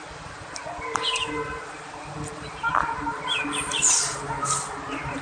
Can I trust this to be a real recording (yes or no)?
no